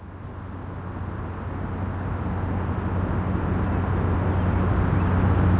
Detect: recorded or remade recorded